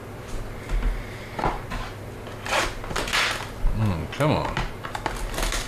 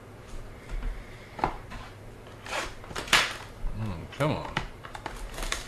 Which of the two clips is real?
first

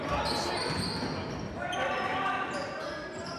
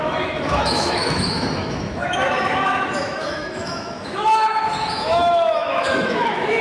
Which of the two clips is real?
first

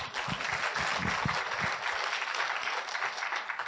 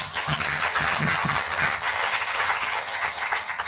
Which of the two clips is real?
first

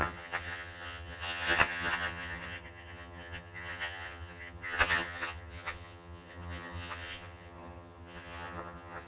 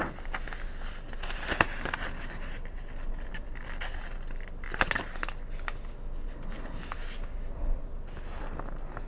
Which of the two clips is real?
second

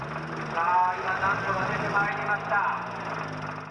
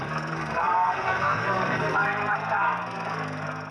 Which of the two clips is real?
first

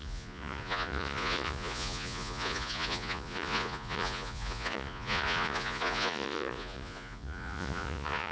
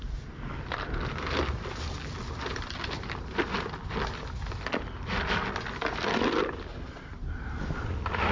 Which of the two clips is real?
second